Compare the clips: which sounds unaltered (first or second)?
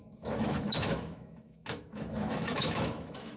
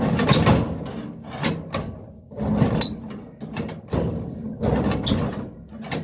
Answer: second